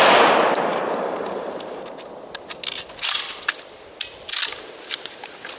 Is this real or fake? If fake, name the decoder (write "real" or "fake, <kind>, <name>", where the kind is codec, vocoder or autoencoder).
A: real